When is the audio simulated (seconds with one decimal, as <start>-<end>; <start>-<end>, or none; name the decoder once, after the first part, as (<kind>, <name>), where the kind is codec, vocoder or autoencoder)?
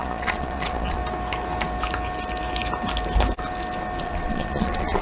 0.0-1.0 (vocoder, Vocos); 4.0-5.0